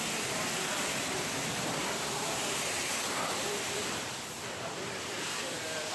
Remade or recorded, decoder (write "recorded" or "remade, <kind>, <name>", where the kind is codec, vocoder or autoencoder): remade, vocoder, BigVGAN v2